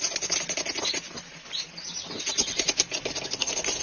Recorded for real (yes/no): yes